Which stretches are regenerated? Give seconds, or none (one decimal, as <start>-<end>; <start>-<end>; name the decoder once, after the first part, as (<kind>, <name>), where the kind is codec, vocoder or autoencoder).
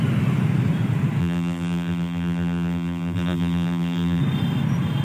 1.2-4.2 (vocoder, BigVGAN v2)